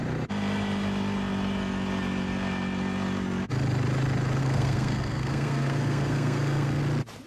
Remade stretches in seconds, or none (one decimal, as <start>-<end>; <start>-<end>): 4.4-6.8